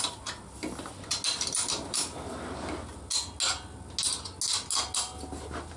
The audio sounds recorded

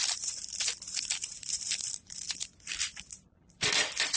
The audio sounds remade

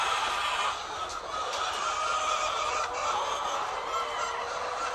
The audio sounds recorded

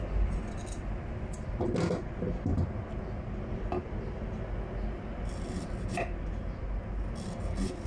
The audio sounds recorded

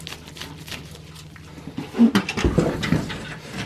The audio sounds recorded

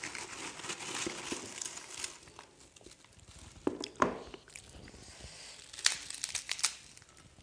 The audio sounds recorded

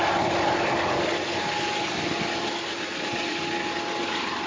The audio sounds recorded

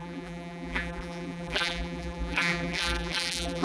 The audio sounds remade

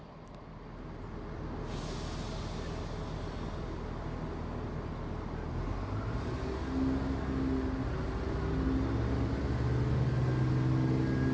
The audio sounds recorded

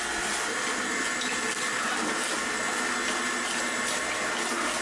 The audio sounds recorded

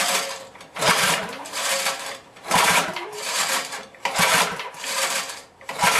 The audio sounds remade